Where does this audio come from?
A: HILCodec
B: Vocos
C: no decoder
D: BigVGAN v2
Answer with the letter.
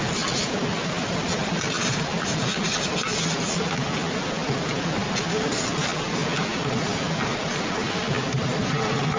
C